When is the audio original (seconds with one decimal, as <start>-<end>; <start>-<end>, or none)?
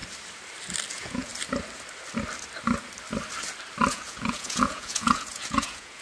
0.0-0.9; 1.3-3.9